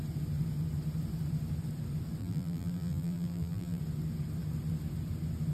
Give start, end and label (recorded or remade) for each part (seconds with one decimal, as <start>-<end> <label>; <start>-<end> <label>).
0.0-2.2 recorded; 2.2-3.8 remade; 3.8-5.5 recorded